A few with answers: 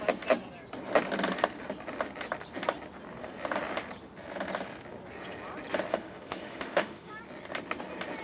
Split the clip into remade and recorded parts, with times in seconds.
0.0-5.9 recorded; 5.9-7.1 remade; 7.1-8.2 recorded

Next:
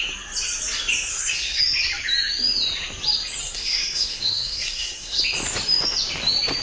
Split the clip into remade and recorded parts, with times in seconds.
0.0-1.1 recorded; 1.1-1.6 remade; 1.6-3.4 recorded; 3.4-5.2 remade; 5.2-6.6 recorded

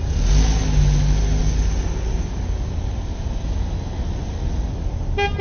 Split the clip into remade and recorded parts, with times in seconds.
0.0-5.4 recorded

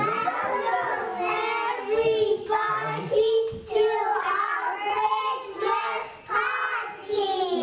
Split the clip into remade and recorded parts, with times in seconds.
0.0-4.2 recorded; 4.2-5.2 remade; 5.2-7.6 recorded